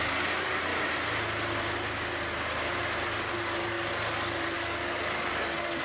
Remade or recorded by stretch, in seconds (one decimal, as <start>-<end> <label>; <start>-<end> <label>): 0.0-0.7 remade; 0.7-3.3 recorded; 3.3-5.8 remade